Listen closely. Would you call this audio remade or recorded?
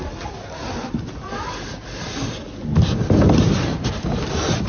recorded